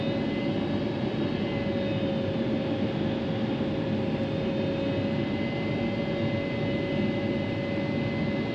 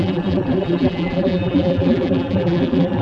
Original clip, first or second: first